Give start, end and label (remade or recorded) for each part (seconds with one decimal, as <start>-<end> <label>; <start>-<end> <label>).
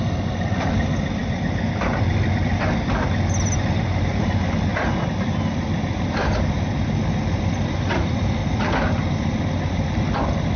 0.0-8.4 remade; 8.4-9.1 recorded; 9.1-10.6 remade